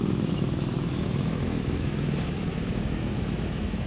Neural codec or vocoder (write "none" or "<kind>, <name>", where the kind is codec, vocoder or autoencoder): autoencoder, DAC-VAE